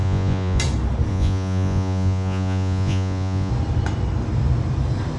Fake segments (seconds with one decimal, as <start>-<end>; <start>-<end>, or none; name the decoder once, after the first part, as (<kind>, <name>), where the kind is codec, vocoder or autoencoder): 0.0-0.6 (vocoder, Vocos); 1.1-3.5

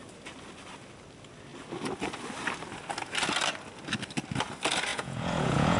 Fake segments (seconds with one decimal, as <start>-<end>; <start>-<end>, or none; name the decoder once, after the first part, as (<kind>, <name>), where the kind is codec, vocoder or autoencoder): 4.9-5.8 (vocoder, Vocos)

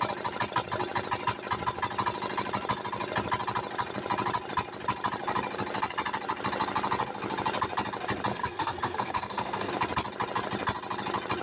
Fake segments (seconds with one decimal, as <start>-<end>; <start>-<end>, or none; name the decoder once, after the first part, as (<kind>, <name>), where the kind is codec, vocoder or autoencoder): 8.3-9.7 (codec, SNAC)

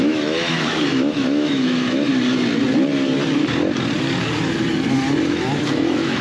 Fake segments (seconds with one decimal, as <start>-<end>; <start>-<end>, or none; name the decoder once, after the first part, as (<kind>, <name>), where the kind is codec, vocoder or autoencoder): 0.0-2.1 (autoencoder, DAC-VAE); 5.3-6.2

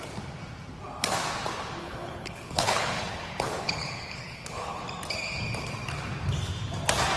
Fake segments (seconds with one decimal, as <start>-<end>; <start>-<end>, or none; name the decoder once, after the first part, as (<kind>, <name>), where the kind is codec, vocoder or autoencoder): 1.8-4.8 (codec, HILCodec)

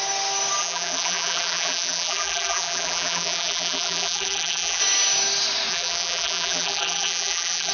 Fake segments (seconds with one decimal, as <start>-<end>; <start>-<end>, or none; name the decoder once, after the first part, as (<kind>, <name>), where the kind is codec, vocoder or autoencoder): 0.6-4.8 (vocoder, BigVGAN v2); 5.7-7.7

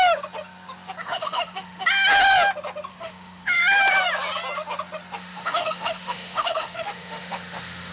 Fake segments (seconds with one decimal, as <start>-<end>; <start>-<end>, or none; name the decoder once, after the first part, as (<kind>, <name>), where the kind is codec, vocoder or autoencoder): 1.0-1.9 (autoencoder, DAC-VAE); 2.9-3.6; 5.2-7.9

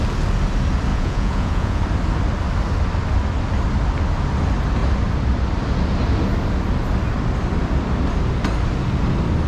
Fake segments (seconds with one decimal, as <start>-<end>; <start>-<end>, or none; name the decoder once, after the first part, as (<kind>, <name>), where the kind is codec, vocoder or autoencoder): 0.9-1.8 (vocoder, Vocos)